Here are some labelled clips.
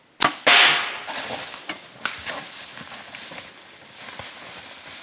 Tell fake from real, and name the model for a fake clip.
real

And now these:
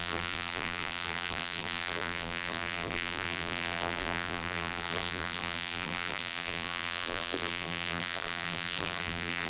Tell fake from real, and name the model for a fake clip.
fake, vocoder, BigVGAN v2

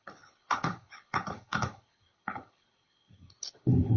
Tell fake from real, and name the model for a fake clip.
fake, codec, HILCodec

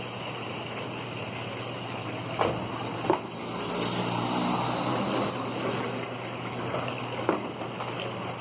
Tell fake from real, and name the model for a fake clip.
real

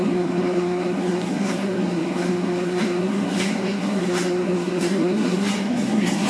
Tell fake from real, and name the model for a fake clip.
fake, codec, SNAC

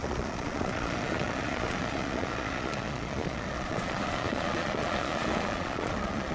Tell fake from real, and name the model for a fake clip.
fake, vocoder, Vocos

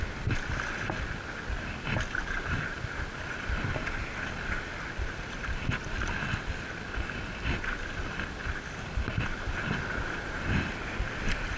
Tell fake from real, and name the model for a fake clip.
real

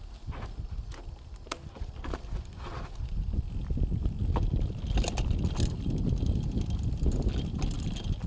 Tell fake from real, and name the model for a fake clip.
real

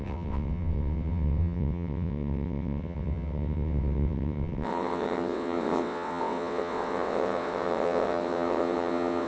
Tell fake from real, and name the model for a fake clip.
fake, vocoder, WaveNeXt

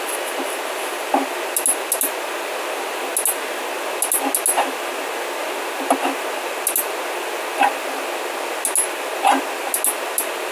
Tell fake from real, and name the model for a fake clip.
real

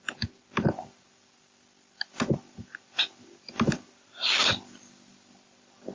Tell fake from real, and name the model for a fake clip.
real